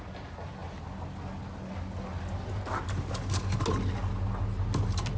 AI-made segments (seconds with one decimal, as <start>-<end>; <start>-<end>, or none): none